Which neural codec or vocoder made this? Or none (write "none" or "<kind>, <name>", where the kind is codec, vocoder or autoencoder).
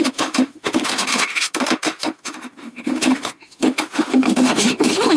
autoencoder, DAC-VAE